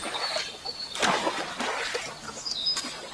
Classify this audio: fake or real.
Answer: real